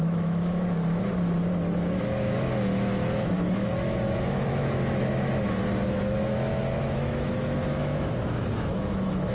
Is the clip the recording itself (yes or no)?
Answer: no